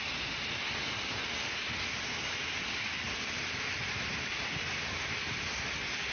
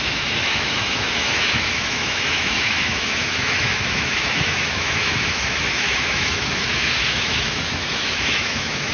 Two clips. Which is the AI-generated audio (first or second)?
second